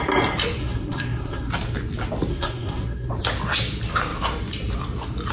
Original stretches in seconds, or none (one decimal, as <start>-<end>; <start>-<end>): 0.0-0.6; 1.5-2.3; 3.1-5.3